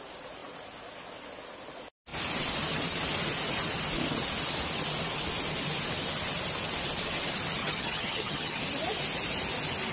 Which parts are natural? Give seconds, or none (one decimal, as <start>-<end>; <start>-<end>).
0.0-7.6; 8.6-9.9